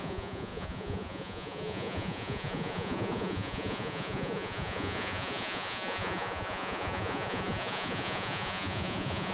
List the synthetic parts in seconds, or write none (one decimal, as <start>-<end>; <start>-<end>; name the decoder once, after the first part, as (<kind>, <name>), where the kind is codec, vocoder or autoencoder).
0.0-9.3 (vocoder, Vocos)